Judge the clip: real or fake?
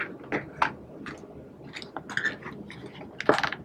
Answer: real